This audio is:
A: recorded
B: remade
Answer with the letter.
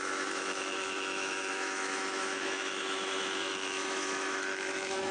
B